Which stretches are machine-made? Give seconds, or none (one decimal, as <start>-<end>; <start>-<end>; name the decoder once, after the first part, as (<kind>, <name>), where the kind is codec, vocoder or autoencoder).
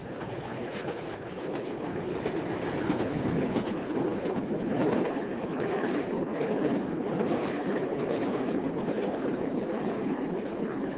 0.0-2.1 (codec, HILCodec); 2.8-11.0